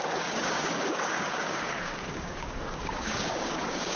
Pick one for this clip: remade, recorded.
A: remade